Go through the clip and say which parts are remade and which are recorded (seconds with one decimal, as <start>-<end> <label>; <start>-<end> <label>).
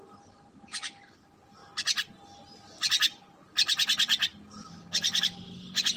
0.0-6.0 recorded